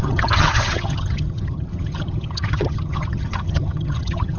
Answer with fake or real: fake